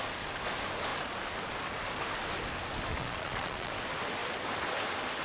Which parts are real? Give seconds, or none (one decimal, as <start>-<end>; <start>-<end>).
0.0-2.9; 3.7-5.2